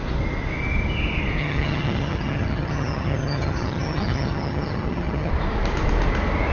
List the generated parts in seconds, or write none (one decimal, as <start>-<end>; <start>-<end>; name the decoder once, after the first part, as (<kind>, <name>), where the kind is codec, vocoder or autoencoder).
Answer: 1.4-5.3 (vocoder, HiFi-GAN)